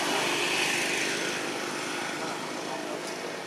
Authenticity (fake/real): real